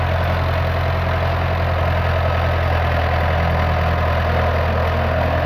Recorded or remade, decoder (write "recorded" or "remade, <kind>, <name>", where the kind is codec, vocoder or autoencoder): recorded